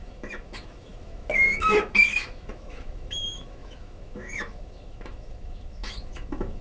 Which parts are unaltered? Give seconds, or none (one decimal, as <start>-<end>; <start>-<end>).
none